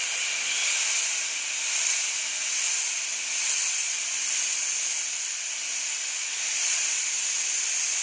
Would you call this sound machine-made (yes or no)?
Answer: no